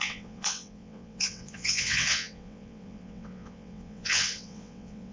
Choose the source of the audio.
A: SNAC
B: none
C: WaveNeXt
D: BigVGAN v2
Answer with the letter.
C